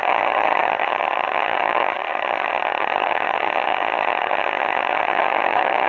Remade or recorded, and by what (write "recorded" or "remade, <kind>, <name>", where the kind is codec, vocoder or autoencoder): remade, vocoder, HiFi-GAN